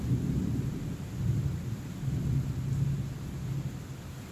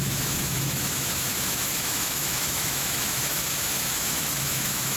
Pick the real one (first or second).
first